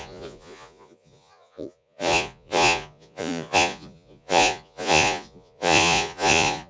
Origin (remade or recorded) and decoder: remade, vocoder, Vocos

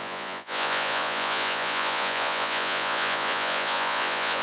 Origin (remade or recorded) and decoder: remade, vocoder, Vocos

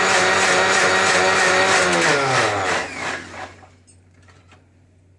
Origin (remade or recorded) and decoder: recorded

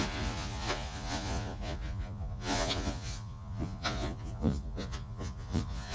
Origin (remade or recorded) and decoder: remade, vocoder, Vocos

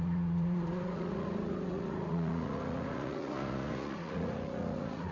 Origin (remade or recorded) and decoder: remade, vocoder, Vocos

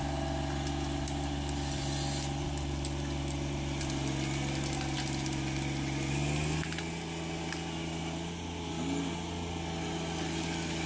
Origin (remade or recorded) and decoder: recorded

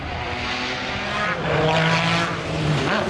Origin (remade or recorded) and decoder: recorded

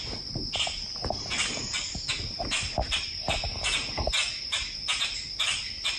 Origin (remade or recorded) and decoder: recorded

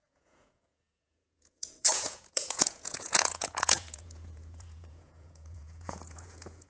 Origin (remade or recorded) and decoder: remade, vocoder, Vocos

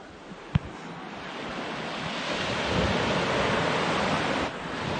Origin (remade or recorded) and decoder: recorded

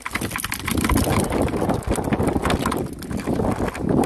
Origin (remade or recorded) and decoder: recorded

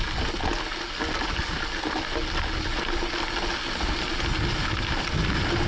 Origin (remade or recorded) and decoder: recorded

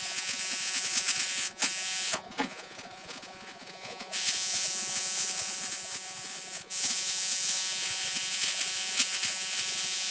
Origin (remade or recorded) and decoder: remade, vocoder, Vocos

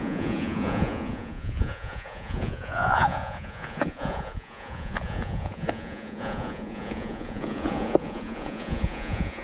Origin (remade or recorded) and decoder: remade, vocoder, Vocos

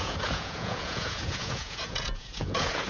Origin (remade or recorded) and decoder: remade, vocoder, Vocos